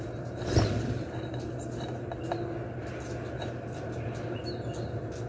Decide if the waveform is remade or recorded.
recorded